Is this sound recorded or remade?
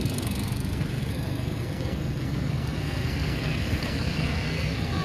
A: remade